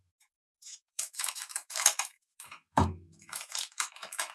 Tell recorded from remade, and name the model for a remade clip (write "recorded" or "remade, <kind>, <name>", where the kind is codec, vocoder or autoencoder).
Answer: remade, autoencoder, DAC-VAE